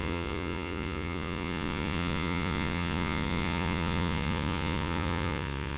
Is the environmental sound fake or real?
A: fake